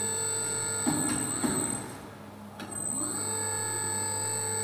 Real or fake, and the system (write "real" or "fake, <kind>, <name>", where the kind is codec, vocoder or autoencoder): real